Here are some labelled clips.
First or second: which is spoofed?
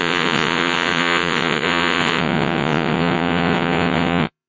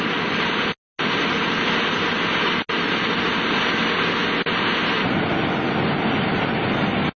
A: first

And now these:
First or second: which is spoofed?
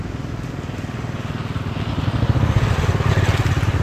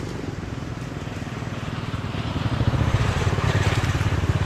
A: second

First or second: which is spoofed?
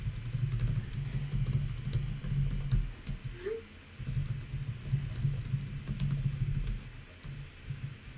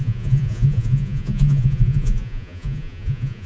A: second